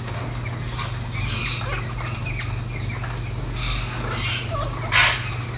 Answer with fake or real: real